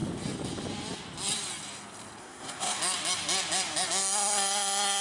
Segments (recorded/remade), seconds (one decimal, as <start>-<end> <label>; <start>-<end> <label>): 0.0-2.2 recorded; 2.2-2.8 remade; 2.8-5.0 recorded